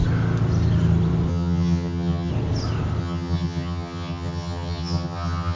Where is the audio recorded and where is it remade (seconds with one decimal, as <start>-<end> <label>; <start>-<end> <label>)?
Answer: 0.0-1.3 recorded; 1.3-2.3 remade; 2.3-3.0 recorded; 3.0-5.6 remade